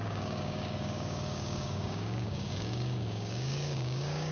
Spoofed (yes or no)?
yes